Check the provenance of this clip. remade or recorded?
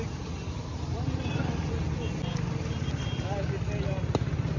recorded